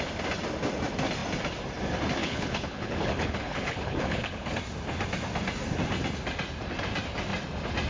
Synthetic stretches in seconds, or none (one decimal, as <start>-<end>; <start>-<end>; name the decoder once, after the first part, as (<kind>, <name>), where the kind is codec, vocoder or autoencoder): 2.2-4.5 (codec, HILCodec)